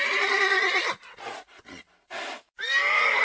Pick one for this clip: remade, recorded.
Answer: recorded